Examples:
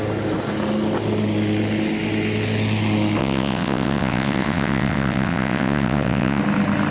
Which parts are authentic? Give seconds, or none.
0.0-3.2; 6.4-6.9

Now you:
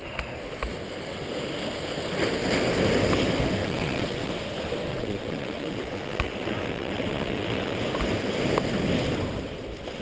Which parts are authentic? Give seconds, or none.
0.0-3.6; 4.3-4.9; 7.8-10.0

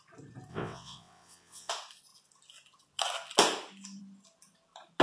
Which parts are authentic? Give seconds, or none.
0.0-0.5; 1.7-5.0

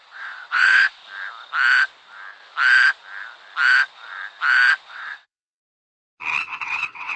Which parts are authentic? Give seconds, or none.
1.0-4.9; 5.6-6.4